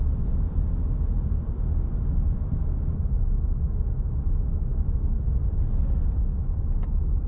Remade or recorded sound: recorded